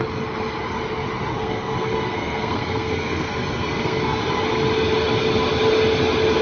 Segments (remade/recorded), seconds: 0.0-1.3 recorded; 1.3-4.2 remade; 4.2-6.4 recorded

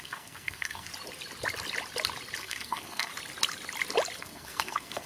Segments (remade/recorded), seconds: 0.0-0.9 remade; 0.9-2.4 recorded; 2.4-3.1 remade; 3.1-4.2 recorded; 4.2-5.1 remade

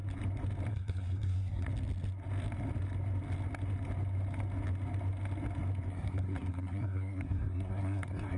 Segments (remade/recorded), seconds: 0.0-0.7 recorded; 0.7-1.7 remade; 1.7-5.9 recorded; 5.9-8.4 remade

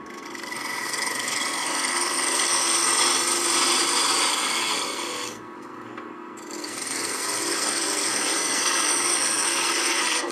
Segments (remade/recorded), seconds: 0.0-2.9 remade; 2.9-4.3 recorded; 4.3-10.3 remade